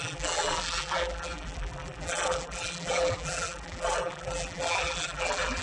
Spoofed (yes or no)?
yes